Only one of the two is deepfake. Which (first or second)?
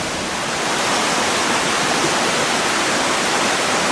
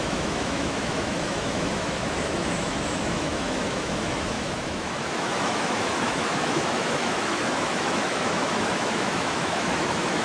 second